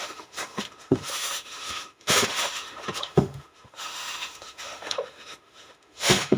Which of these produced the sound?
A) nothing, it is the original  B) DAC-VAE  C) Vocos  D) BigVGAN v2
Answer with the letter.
B